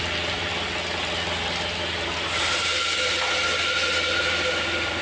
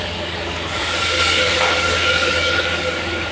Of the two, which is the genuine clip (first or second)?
first